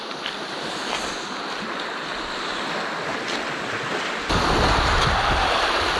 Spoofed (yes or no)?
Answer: no